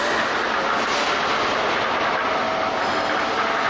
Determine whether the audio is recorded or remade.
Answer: recorded